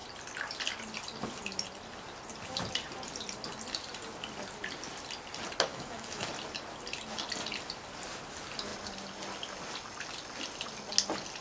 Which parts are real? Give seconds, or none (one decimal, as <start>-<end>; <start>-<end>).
0.0-5.7; 6.3-11.4